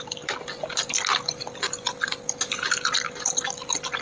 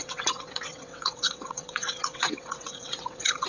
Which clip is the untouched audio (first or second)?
first